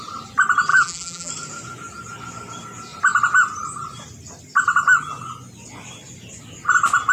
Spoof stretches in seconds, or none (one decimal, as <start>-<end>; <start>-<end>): 0.7-1.3